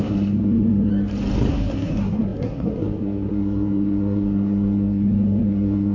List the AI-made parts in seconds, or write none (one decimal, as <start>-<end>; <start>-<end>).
0.0-0.9; 1.5-5.9

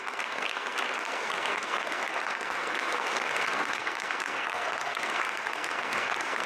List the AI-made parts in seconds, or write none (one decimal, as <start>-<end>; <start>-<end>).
0.0-6.5

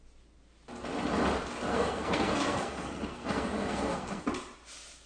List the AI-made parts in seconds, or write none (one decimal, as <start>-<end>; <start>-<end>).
1.7-4.2

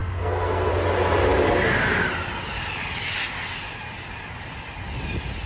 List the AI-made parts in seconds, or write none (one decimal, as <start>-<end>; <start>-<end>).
0.0-0.7

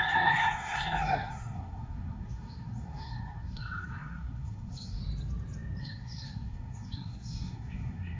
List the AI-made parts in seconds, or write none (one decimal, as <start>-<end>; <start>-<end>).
0.0-5.0; 5.8-8.2